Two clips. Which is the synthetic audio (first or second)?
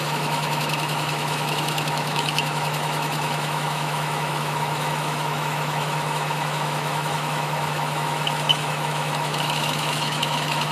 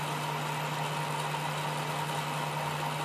first